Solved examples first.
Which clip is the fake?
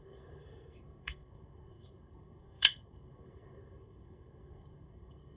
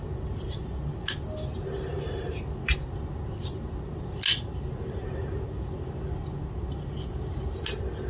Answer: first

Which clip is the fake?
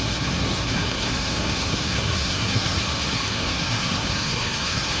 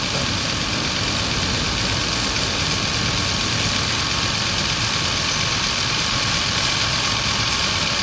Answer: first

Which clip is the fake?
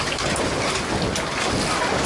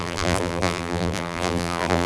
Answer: second